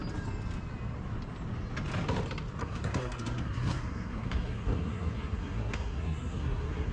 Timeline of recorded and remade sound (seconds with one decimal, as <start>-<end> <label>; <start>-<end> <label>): 0.0-2.6 recorded; 2.6-6.9 remade